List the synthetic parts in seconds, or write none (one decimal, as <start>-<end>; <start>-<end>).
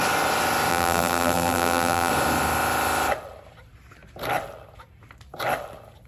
0.7-2.1